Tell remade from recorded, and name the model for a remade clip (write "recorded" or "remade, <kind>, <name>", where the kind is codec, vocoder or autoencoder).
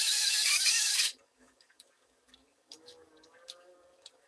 remade, codec, DAC